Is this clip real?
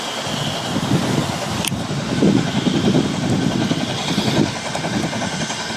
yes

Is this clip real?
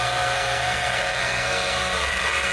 no